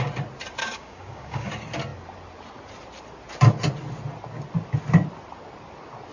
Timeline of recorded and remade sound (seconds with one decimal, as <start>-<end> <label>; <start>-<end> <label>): 0.0-0.6 recorded; 0.6-1.5 remade; 1.5-6.1 recorded